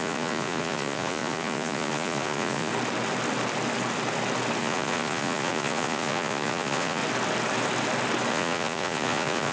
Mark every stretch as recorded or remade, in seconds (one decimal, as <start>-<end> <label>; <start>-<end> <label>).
0.0-2.7 remade; 2.7-4.6 recorded; 4.6-7.0 remade; 7.0-8.3 recorded; 8.3-9.5 remade